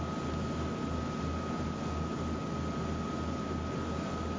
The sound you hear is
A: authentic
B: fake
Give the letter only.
A